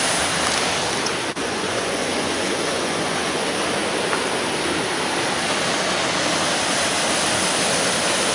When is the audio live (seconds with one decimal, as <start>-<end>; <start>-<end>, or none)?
0.0-1.4; 3.5-8.3